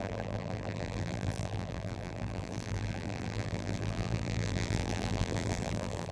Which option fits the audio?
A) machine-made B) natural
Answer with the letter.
A